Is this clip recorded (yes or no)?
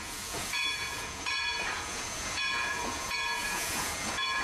no